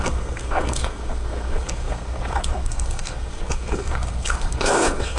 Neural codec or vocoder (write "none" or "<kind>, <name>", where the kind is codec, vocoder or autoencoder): codec, SNAC